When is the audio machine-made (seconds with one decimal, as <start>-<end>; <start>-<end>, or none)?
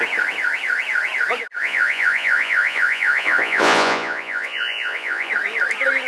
1.6-5.3